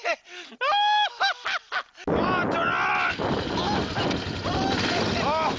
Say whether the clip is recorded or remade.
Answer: recorded